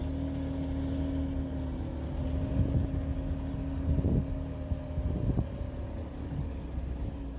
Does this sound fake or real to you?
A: real